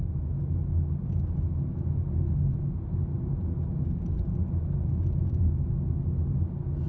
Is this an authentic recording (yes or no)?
yes